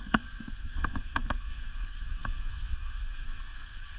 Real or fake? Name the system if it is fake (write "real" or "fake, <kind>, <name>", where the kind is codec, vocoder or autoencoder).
fake, codec, SNAC